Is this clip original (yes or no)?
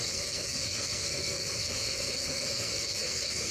no